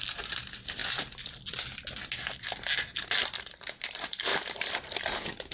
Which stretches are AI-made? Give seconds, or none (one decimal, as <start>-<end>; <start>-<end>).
0.0-0.8; 3.8-5.5